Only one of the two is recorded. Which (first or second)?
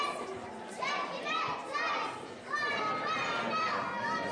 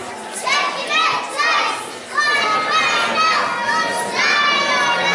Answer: second